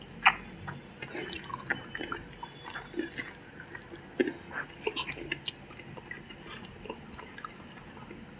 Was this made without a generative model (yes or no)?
yes